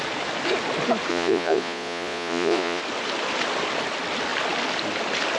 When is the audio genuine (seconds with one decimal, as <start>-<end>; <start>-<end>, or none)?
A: 0.0-1.1; 2.8-5.4